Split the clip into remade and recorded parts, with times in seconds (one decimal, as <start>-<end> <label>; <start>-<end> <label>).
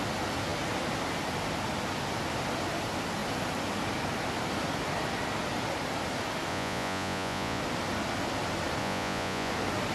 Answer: 0.0-6.5 recorded; 6.5-7.6 remade; 7.6-8.8 recorded; 8.8-9.5 remade; 9.5-9.9 recorded